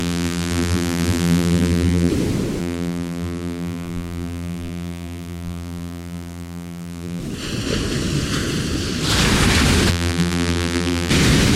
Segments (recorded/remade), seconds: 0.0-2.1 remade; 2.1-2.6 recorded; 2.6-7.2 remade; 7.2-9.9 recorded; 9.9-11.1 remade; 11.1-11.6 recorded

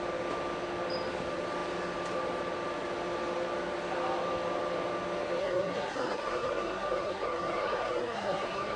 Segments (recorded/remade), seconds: 0.0-5.4 recorded; 5.4-8.8 remade

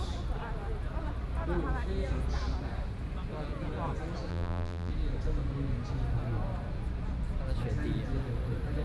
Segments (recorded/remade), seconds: 0.0-4.3 recorded; 4.3-4.9 remade; 4.9-8.8 recorded